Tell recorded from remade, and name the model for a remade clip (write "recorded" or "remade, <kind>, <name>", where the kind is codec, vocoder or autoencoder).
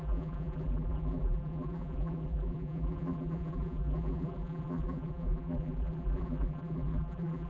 remade, vocoder, BigVGAN v2